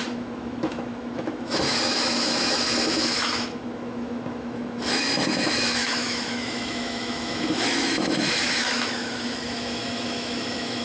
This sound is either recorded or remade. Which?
remade